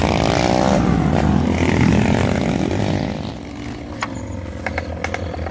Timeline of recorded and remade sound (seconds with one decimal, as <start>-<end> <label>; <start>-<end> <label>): 0.0-5.5 recorded

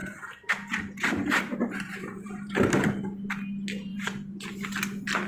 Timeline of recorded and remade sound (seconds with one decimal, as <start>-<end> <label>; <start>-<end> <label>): 0.0-3.2 remade; 3.2-5.3 recorded

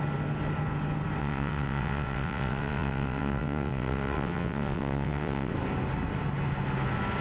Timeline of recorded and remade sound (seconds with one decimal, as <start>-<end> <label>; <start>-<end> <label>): 0.0-1.2 recorded; 1.2-5.5 remade; 5.5-7.2 recorded

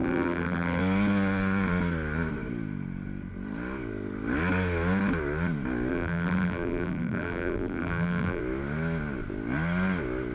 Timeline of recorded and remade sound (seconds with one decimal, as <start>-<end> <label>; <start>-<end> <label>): 0.0-0.8 remade; 0.8-5.9 recorded; 5.9-8.4 remade; 8.4-10.3 recorded

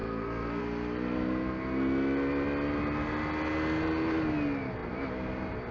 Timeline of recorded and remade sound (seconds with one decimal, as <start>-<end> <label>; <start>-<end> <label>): 0.0-0.6 remade; 0.6-5.7 recorded